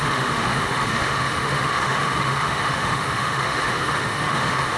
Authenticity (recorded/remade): remade